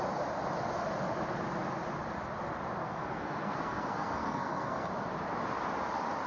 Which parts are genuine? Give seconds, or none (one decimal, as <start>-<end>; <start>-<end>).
0.0-2.8; 4.9-6.3